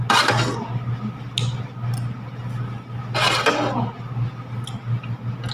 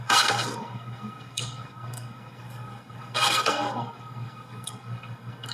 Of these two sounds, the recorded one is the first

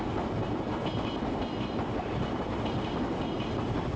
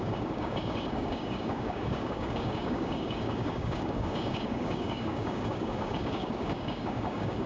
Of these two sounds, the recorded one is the first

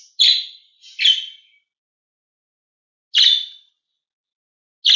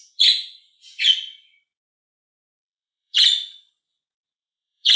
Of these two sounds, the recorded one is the first